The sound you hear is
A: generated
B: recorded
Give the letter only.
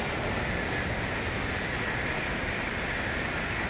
B